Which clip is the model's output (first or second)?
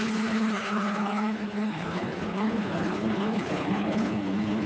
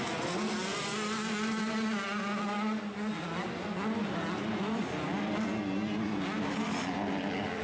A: first